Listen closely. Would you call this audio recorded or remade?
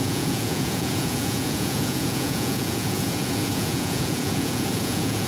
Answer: remade